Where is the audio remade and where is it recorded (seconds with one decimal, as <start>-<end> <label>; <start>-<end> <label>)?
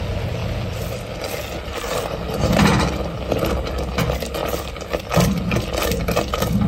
0.0-6.7 recorded